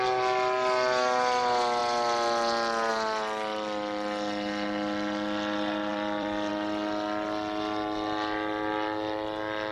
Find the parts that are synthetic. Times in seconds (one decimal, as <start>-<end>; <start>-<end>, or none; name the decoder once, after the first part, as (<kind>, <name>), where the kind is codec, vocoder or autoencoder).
5.9-6.5 (vocoder, BigVGAN v2)